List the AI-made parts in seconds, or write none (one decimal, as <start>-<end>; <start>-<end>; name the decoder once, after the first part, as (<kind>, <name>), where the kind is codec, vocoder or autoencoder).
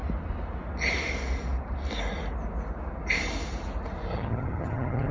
4.1-5.1 (vocoder, HiFi-GAN)